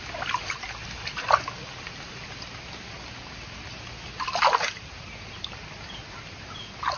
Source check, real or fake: real